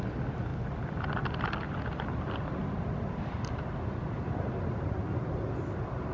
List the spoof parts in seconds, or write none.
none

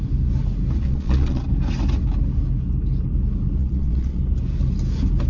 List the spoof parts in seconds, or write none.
0.8-1.4 (vocoder, Vocos); 3.6-4.2